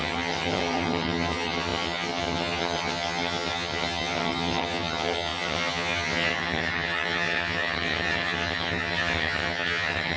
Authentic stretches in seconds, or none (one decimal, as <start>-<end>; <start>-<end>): none